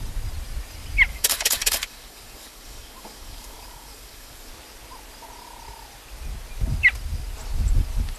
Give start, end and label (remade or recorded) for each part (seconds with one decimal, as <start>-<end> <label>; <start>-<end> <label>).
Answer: 0.0-1.1 recorded; 1.1-4.5 remade; 4.5-8.2 recorded